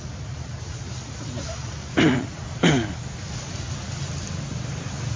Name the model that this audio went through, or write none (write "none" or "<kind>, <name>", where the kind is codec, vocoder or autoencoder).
none